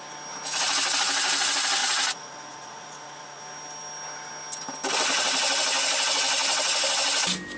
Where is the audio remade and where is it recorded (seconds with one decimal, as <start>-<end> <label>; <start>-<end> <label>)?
0.0-1.8 recorded; 1.8-3.4 remade; 3.4-7.6 recorded